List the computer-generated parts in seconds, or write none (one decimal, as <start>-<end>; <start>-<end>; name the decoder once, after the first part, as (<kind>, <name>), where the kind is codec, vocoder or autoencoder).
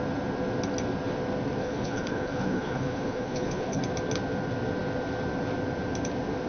1.6-3.8 (codec, HILCodec)